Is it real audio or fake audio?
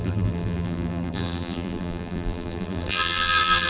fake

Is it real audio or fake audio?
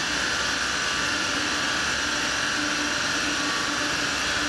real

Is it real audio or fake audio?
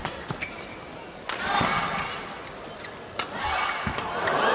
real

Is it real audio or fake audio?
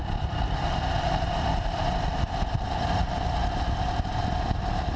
fake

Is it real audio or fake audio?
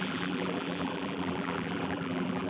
fake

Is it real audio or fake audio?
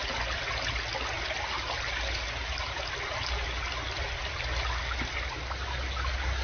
real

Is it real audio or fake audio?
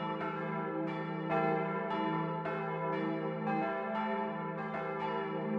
real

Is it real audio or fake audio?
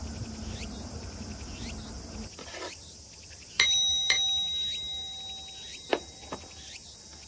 real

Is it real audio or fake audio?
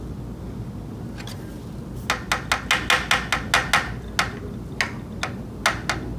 real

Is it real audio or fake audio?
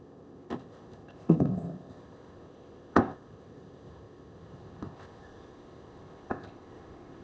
fake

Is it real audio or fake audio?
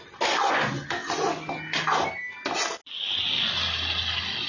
real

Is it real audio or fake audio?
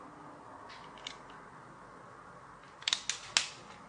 real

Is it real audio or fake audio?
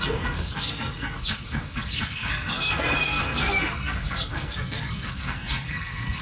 fake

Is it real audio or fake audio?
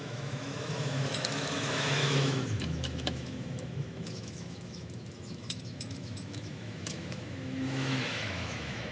fake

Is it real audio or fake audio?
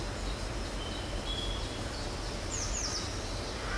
real